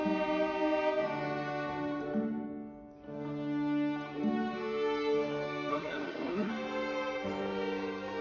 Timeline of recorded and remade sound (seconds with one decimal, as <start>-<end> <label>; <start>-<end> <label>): 0.0-5.7 recorded; 5.7-6.5 remade; 6.5-8.2 recorded